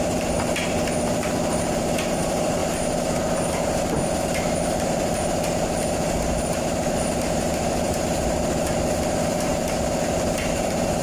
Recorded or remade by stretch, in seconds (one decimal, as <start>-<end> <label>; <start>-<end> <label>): 0.0-2.6 remade; 2.6-4.2 recorded; 4.2-11.0 remade